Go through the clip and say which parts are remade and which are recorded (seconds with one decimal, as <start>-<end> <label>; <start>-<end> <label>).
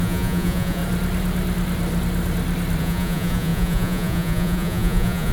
0.0-0.8 remade; 0.8-2.8 recorded; 2.8-5.3 remade